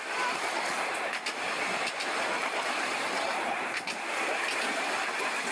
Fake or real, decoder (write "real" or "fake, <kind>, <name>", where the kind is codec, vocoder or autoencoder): real